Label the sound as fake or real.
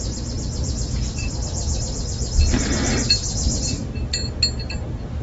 real